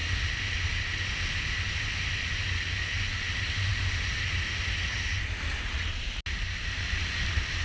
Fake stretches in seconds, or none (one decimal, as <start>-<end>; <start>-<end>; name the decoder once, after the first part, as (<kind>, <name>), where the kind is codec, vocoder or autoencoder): none